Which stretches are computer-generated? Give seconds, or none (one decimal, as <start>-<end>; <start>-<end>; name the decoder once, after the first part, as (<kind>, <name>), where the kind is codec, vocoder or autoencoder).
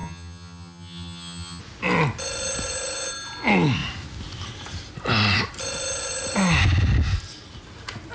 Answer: 0.0-1.6 (vocoder, HiFi-GAN)